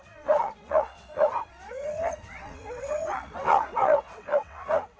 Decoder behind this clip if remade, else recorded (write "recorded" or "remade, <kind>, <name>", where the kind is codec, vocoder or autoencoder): remade, vocoder, WaveNeXt